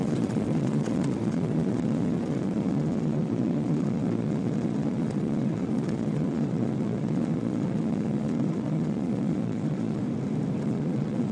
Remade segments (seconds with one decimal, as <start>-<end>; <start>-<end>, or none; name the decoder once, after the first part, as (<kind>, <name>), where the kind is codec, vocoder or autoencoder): 0.0-10.0 (vocoder, Vocos); 10.6-11.3